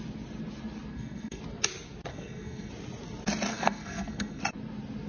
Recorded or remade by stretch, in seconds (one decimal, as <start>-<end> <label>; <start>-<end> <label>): 0.0-0.9 recorded; 0.9-1.4 remade; 1.4-2.1 recorded; 2.1-2.7 remade; 2.7-3.5 recorded; 3.5-4.4 remade; 4.4-5.1 recorded